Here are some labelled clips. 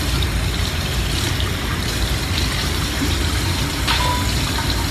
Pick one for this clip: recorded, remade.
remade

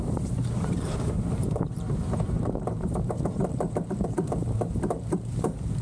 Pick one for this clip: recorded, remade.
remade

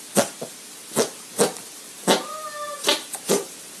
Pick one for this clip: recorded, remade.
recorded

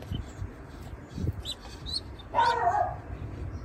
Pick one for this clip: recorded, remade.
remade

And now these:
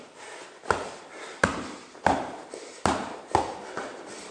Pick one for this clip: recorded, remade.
remade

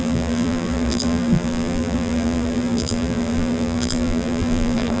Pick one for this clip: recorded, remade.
remade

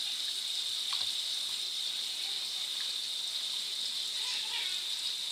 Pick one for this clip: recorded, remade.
recorded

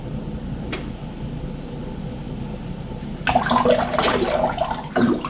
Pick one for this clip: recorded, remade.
recorded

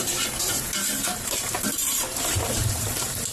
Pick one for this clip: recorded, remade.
remade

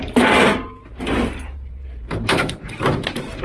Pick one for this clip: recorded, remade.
remade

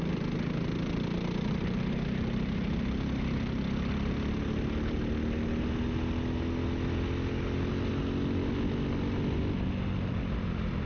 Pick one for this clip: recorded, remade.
recorded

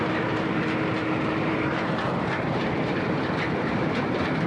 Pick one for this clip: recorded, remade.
remade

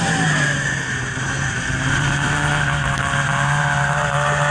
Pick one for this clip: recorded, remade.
remade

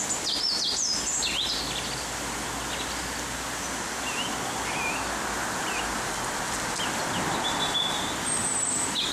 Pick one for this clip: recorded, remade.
recorded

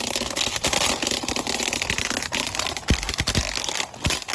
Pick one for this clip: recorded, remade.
recorded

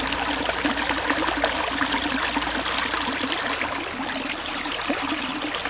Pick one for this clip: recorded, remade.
recorded